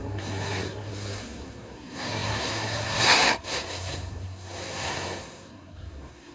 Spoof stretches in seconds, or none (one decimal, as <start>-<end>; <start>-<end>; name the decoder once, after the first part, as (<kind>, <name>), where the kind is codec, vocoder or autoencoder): 0.0-6.3 (codec, SNAC)